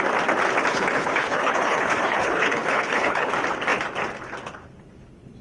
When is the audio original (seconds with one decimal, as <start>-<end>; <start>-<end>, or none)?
0.0-0.7; 3.3-5.4